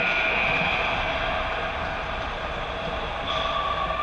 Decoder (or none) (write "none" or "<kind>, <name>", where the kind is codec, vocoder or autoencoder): none